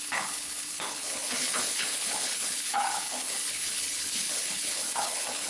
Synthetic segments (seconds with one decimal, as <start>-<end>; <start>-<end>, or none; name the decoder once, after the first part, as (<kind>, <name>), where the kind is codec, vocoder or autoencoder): 0.0-5.5 (codec, HILCodec)